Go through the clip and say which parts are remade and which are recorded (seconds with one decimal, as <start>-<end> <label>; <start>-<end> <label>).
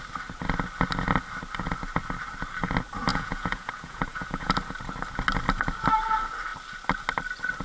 0.0-3.1 recorded; 3.1-4.5 remade; 4.5-7.6 recorded